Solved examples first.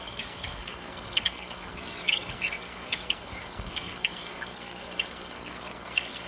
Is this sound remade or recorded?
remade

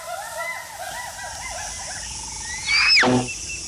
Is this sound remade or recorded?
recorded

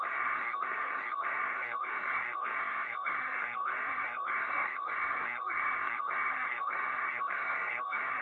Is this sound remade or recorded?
remade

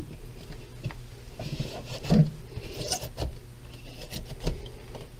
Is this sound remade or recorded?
recorded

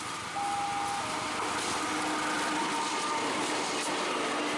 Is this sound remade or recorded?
recorded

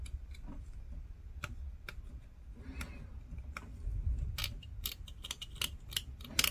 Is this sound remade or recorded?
recorded